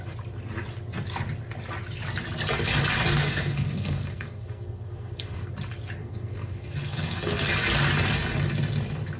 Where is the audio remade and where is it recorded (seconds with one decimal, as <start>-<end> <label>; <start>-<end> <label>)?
0.0-3.2 recorded; 3.2-5.5 remade; 5.5-6.0 recorded; 6.0-7.5 remade; 7.5-9.2 recorded